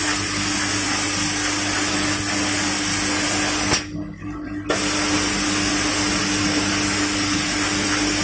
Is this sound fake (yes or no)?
no